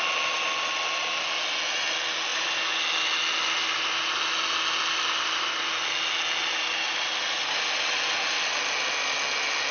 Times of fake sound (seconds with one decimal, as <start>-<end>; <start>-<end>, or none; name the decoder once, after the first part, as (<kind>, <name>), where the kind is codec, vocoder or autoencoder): none